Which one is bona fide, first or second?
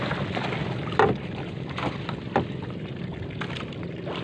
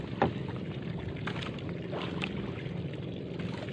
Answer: first